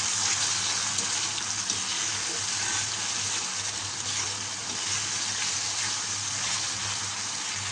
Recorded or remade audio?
recorded